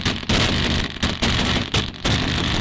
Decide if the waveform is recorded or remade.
recorded